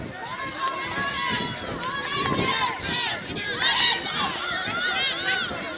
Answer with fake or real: real